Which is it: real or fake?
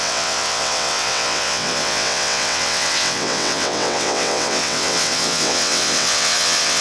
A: fake